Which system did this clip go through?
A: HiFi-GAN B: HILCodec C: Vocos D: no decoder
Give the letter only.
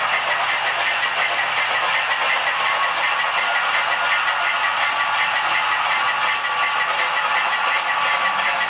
D